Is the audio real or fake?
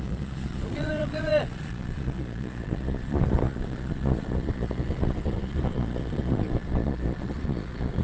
fake